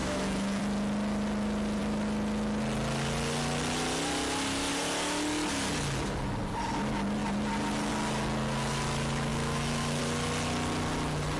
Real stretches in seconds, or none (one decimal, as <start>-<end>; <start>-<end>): 0.6-9.3; 10.0-11.4